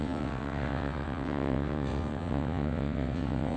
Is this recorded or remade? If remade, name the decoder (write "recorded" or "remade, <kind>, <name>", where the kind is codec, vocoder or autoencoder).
remade, vocoder, WaveNeXt